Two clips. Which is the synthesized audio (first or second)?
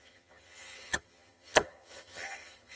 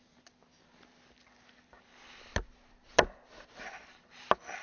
first